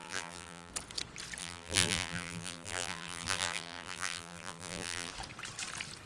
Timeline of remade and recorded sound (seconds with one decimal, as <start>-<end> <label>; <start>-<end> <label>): 0.0-0.7 remade; 0.7-1.4 recorded; 1.4-5.1 remade; 5.1-6.1 recorded